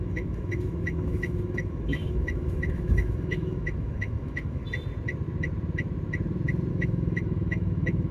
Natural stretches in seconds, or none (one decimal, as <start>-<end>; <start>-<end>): 4.6-6.7